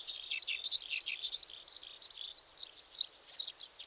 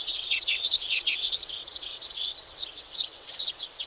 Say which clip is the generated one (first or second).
second